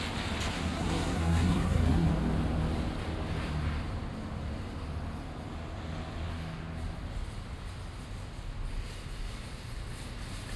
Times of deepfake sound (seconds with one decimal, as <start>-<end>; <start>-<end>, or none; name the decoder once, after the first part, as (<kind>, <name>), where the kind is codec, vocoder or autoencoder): 0.5-2.1 (codec, SNAC)